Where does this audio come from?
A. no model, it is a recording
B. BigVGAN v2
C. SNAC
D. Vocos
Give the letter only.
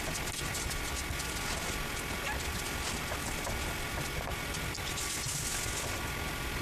A